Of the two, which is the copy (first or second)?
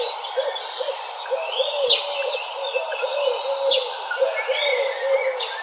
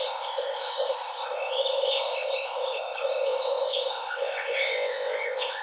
second